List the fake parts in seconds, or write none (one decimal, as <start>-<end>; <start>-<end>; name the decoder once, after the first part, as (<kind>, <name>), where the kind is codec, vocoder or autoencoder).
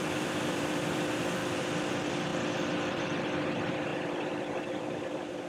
0.0-1.4 (vocoder, BigVGAN v2); 1.9-2.3; 2.9-5.5